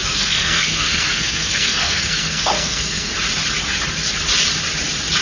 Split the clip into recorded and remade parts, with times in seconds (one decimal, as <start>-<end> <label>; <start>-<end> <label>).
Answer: 0.0-3.1 remade; 3.1-5.2 recorded